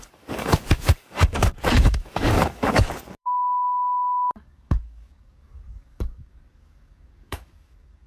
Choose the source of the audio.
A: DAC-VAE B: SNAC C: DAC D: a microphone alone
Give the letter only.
C